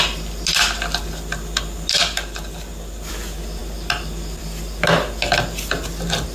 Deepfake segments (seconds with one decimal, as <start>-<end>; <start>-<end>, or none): none